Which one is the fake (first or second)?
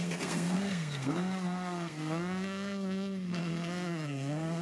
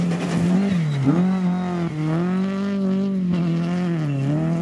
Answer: first